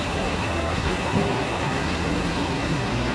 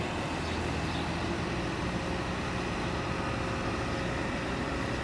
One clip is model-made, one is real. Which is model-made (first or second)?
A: first